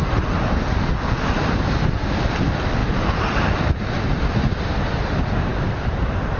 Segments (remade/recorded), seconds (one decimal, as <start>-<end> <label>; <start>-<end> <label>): 0.0-6.4 recorded

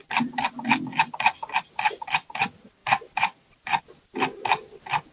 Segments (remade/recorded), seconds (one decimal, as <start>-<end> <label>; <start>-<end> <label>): 0.0-2.8 recorded; 2.8-3.8 remade; 3.8-5.1 recorded

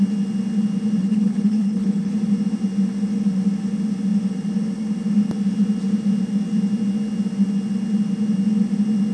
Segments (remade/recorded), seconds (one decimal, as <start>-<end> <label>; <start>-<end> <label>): 0.0-1.0 recorded; 1.0-2.1 remade; 2.1-9.1 recorded

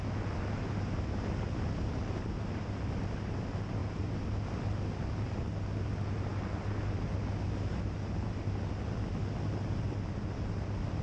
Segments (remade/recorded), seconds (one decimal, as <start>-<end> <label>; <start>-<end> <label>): 0.0-11.0 recorded

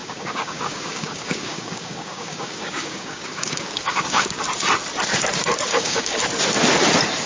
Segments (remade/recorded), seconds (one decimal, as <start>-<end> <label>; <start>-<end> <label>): 0.0-4.4 remade; 4.4-5.7 recorded; 5.7-6.2 remade; 6.2-7.3 recorded